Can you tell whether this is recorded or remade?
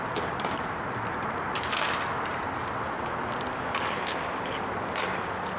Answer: recorded